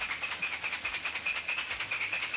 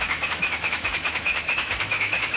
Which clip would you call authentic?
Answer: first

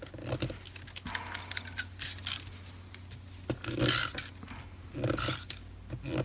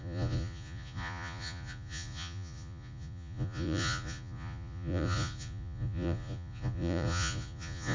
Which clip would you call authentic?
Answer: first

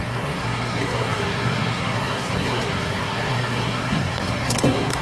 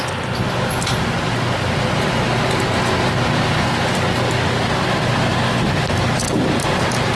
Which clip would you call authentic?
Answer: second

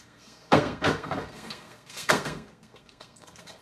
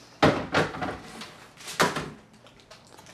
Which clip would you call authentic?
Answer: second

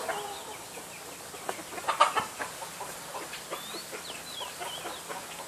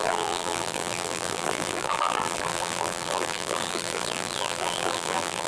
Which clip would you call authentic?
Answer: first